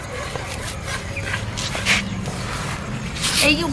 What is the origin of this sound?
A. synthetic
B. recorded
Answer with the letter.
B